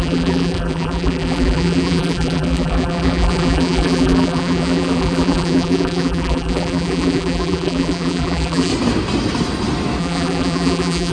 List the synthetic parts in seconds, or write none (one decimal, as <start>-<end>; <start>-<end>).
0.0-8.7; 10.0-11.1

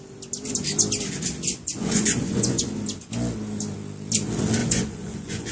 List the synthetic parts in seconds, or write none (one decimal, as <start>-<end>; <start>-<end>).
1.5-2.7; 4.6-5.5

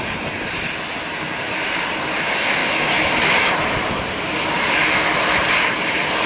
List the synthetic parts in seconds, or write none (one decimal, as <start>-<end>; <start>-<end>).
2.6-3.5

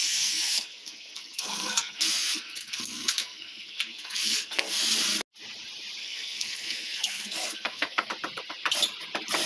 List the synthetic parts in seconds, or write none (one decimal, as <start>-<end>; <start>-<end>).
0.0-4.8; 6.0-8.1

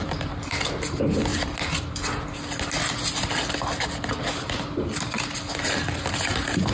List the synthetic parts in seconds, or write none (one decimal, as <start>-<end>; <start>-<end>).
none

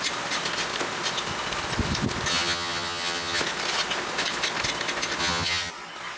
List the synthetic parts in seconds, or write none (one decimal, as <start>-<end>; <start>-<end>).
2.3-3.4; 5.2-5.7

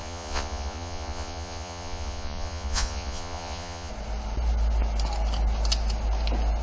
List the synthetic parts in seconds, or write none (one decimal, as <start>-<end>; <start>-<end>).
0.0-3.9